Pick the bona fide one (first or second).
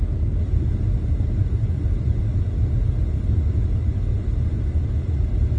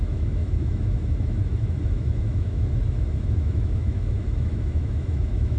first